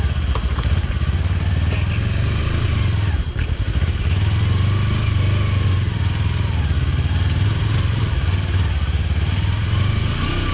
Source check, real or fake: real